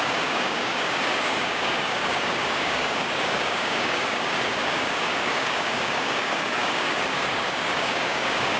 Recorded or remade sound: remade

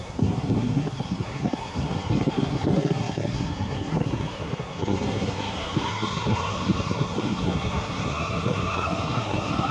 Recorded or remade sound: remade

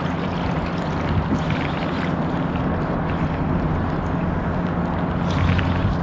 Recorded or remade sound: recorded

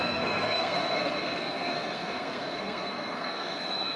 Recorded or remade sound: remade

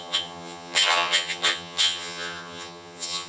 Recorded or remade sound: remade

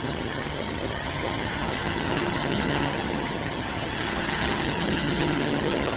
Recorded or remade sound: remade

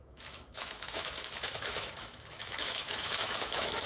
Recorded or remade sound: remade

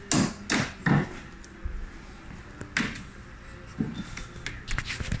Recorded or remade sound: recorded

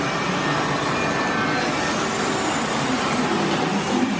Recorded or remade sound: recorded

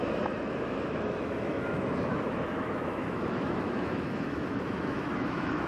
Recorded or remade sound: remade